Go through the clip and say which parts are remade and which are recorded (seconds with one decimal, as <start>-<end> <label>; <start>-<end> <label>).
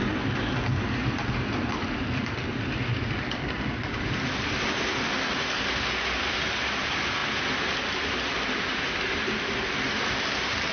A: 0.0-10.7 remade